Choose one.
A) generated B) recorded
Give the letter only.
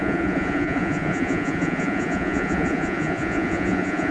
A